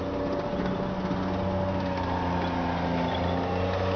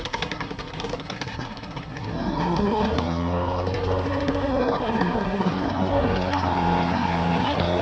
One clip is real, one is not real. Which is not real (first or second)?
second